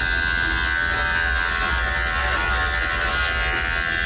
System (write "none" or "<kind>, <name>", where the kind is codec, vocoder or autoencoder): none